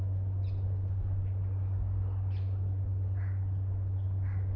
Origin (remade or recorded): recorded